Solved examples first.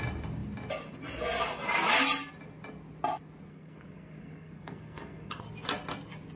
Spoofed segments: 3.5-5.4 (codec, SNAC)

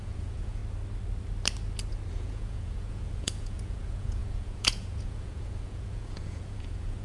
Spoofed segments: 0.0-0.6 (vocoder, Vocos); 2.1-7.0

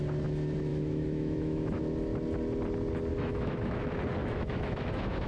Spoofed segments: 0.7-1.8 (autoencoder, DAC-VAE); 3.1-3.8; 4.2-5.3

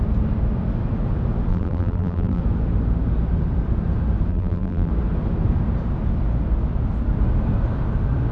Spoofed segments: 1.5-2.4 (vocoder, BigVGAN v2); 4.3-4.9

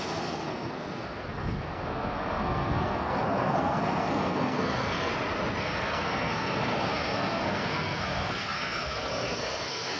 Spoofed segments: 0.0-5.1 (codec, SNAC); 5.6-10.0

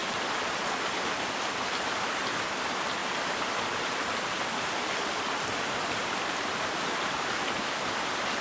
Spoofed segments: 3.0-6.4 (vocoder, BigVGAN v2)

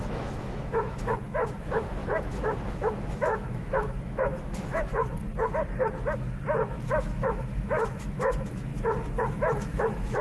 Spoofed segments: 0.0-4.9 (autoencoder, DAC-VAE); 6.9-8.7; 9.3-10.2